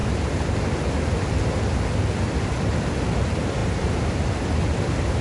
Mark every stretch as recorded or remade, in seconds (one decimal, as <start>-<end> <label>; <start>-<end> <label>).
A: 0.0-3.6 recorded; 3.6-4.3 remade; 4.3-5.2 recorded